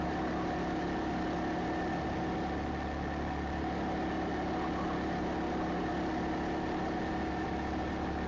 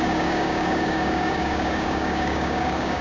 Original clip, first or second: first